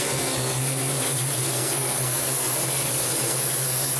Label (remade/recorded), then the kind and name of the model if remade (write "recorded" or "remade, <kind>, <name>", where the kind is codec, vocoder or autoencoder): remade, codec, SNAC